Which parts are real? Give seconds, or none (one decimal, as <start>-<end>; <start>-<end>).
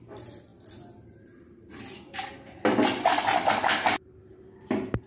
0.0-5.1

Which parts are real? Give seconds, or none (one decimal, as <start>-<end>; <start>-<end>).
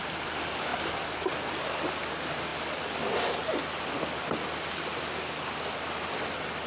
0.0-6.7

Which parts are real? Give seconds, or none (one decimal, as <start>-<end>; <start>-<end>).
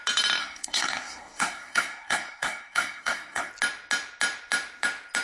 0.0-0.4; 3.5-5.2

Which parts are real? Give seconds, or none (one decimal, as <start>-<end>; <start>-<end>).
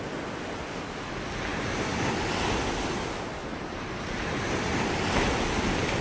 0.0-1.5; 2.1-3.4; 4.8-6.0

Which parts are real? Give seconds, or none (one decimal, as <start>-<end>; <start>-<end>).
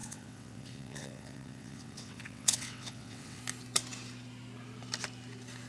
3.4-5.7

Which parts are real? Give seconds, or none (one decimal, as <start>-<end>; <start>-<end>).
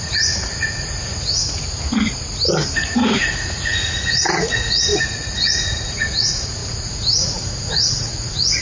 1.4-2.9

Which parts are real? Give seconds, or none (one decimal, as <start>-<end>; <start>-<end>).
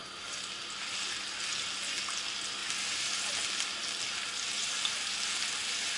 0.0-6.0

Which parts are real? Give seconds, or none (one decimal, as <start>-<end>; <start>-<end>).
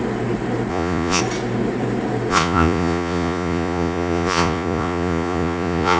0.0-0.7; 1.2-2.3